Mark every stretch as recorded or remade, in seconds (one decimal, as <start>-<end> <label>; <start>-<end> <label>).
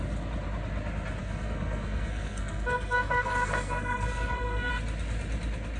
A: 0.0-1.2 recorded; 1.2-4.7 remade; 4.7-5.8 recorded